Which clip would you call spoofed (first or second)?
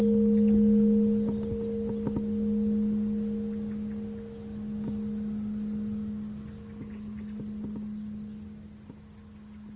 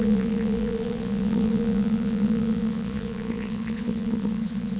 second